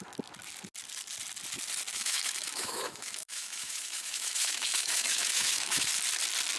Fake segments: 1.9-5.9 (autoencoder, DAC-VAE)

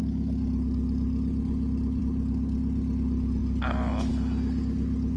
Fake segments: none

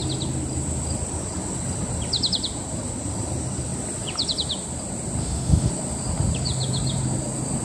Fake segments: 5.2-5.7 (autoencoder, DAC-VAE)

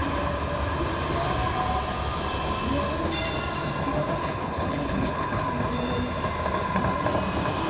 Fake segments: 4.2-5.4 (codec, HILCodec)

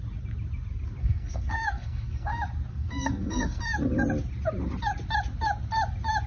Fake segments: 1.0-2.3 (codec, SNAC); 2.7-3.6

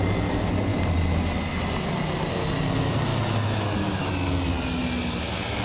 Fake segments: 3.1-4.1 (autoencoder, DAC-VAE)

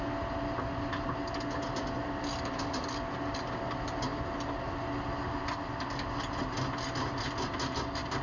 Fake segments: none

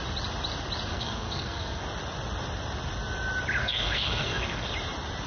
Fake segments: 0.9-1.8 (codec, SNAC); 3.6-4.7